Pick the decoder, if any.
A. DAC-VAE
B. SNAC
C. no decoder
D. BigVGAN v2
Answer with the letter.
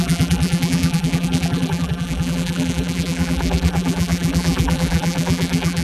D